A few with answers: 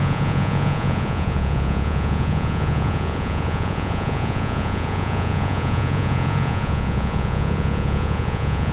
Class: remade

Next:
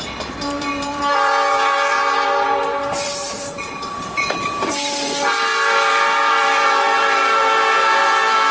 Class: remade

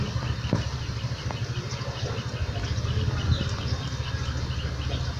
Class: recorded